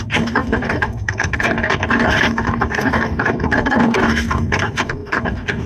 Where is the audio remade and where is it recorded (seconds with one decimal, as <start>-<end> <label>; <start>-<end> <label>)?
0.0-5.7 remade